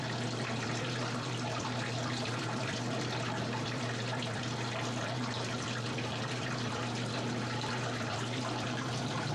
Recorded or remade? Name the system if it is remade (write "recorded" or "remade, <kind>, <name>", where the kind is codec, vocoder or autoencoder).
remade, vocoder, BigVGAN v2